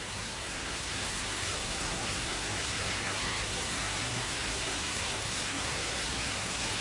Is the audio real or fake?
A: fake